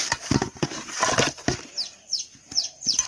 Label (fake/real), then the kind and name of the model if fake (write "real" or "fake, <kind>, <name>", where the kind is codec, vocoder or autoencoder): fake, vocoder, BigVGAN v2